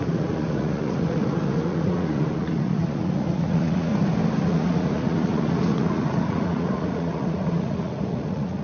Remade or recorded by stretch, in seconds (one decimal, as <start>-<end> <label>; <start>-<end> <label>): 0.0-3.9 remade; 3.9-4.4 recorded; 4.4-8.6 remade